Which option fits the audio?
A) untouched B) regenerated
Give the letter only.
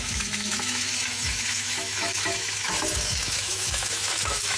B